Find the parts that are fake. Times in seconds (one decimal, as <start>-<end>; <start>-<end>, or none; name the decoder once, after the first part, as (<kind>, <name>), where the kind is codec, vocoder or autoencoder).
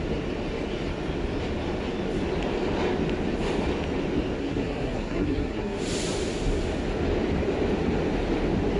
4.4-5.8 (codec, SNAC)